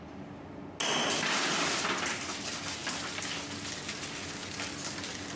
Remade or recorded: recorded